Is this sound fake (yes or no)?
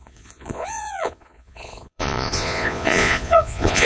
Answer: yes